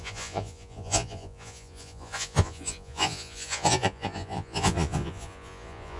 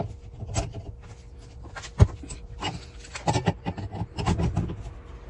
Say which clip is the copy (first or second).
first